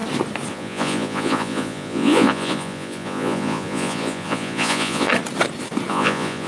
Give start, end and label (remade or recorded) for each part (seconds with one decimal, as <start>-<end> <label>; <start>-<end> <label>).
0.0-0.5 recorded; 0.5-5.1 remade; 5.1-5.9 recorded; 5.9-6.5 remade